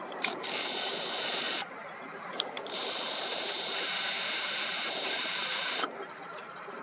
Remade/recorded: remade